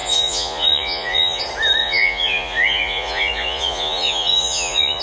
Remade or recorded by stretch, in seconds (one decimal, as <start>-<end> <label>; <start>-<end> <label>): 0.0-1.4 remade; 1.4-1.8 recorded; 1.8-5.0 remade